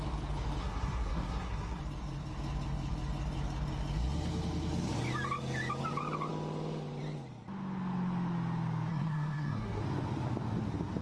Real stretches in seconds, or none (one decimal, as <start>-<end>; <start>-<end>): 0.0-0.6; 1.8-8.9; 9.8-11.0

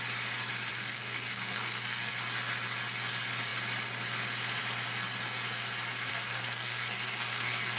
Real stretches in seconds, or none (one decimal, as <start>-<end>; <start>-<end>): 0.0-0.7; 2.1-6.1

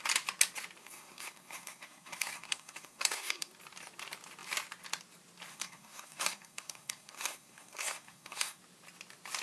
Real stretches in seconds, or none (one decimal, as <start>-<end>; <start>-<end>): 0.0-0.8; 3.5-5.5; 8.6-9.4

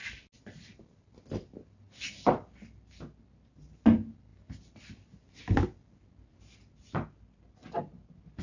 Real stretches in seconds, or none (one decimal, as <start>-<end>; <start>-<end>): 0.0-8.4